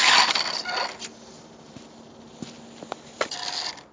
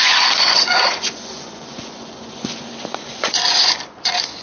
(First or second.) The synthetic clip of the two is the second